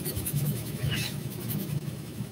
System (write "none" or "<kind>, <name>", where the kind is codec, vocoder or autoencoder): autoencoder, DAC-VAE